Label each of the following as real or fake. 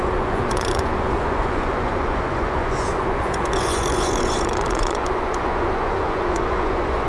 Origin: fake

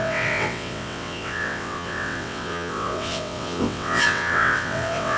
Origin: fake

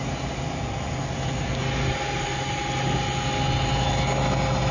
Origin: real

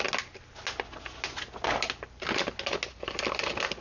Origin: real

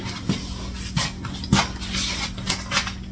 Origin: real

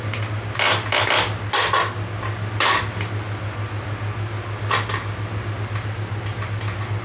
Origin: real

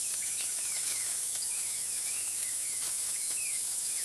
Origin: fake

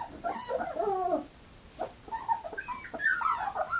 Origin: real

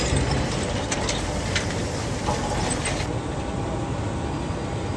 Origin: real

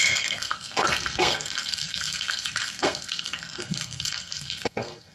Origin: fake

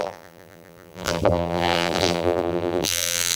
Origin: fake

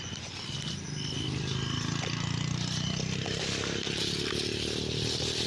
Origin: real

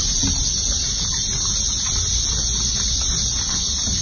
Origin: real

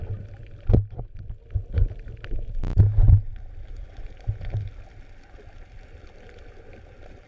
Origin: real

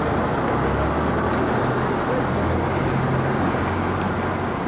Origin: real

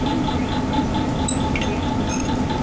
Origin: real